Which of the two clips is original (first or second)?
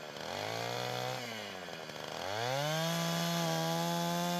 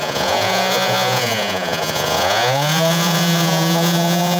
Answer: first